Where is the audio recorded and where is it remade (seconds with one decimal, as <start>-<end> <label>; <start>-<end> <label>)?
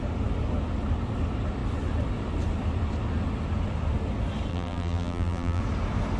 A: 0.0-4.5 recorded; 4.5-5.6 remade; 5.6-6.2 recorded